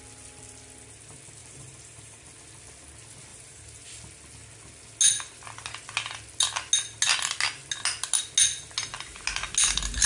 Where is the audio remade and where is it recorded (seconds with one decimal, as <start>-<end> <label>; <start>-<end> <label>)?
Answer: 0.0-1.4 recorded; 1.4-2.2 remade; 2.2-3.3 recorded; 3.3-4.0 remade; 4.0-10.1 recorded